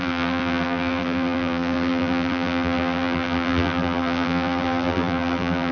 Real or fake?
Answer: fake